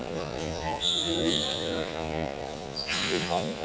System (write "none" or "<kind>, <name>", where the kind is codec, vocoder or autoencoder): vocoder, Vocos